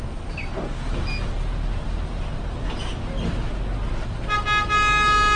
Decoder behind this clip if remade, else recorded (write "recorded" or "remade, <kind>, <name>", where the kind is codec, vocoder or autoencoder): recorded